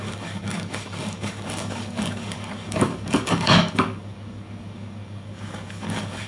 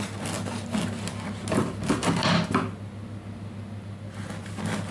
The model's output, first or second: first